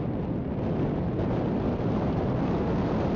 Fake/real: real